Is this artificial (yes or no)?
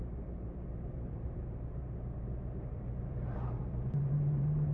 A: yes